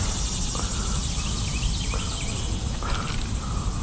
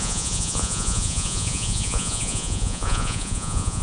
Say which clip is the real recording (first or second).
first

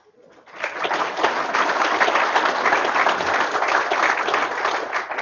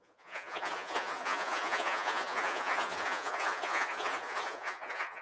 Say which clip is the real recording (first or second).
first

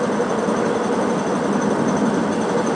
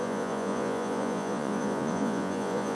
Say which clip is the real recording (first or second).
first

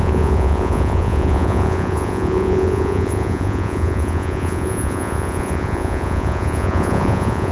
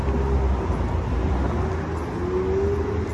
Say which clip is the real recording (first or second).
second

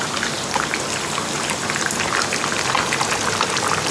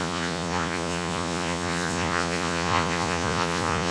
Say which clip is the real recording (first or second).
first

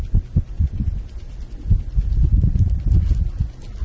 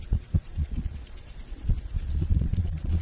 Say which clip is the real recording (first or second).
first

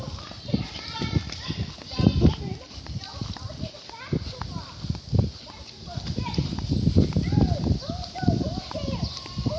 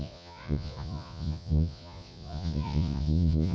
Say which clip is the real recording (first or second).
first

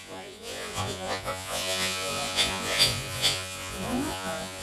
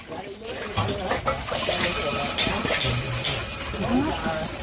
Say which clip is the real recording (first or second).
second